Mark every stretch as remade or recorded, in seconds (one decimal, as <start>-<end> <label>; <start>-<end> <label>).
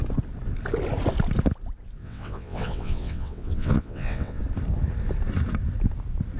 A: 0.0-2.0 recorded; 2.0-4.4 remade; 4.4-6.4 recorded